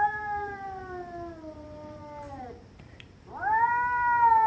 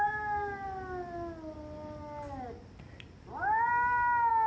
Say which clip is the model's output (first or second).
first